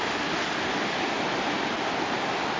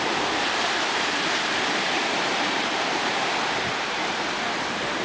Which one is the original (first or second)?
first